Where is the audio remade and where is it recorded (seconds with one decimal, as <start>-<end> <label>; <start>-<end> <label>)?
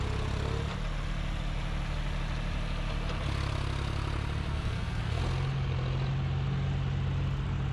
0.0-4.5 recorded; 4.5-5.2 remade; 5.2-7.7 recorded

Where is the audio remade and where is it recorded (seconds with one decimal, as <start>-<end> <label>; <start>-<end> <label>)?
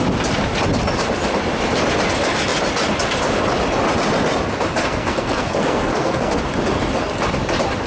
0.0-4.8 recorded; 4.8-6.4 remade; 6.4-7.9 recorded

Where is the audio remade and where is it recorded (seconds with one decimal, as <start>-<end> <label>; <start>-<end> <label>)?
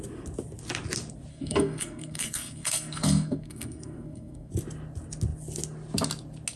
0.0-1.3 recorded; 1.3-4.5 remade; 4.5-6.6 recorded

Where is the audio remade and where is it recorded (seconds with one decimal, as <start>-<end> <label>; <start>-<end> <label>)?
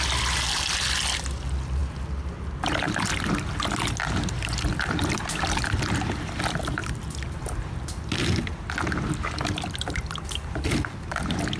0.0-11.6 recorded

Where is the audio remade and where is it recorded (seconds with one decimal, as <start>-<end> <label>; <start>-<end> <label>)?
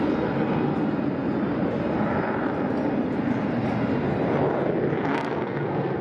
0.0-5.1 recorded; 5.1-6.0 remade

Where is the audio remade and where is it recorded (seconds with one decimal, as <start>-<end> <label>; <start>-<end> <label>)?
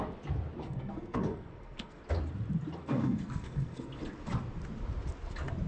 0.0-0.6 recorded; 0.6-2.0 remade; 2.0-2.8 recorded; 2.8-4.0 remade; 4.0-5.7 recorded